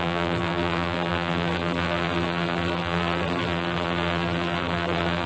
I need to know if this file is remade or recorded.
remade